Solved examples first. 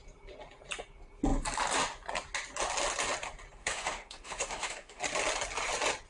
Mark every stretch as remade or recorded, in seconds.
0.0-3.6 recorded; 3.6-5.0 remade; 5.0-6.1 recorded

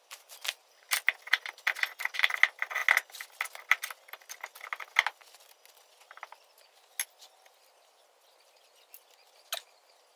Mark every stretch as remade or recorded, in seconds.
0.0-10.2 recorded

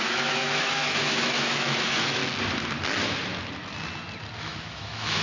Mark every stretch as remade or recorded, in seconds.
0.0-2.2 remade; 2.2-4.4 recorded; 4.4-5.2 remade

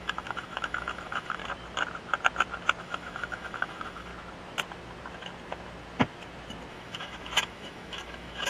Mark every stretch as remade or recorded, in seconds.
0.0-1.4 remade; 1.4-2.8 recorded; 2.8-4.1 remade; 4.1-6.7 recorded; 6.7-8.5 remade

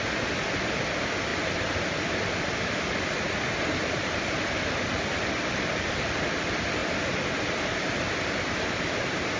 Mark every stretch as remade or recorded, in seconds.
0.0-9.4 recorded